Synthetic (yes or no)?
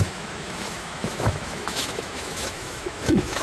yes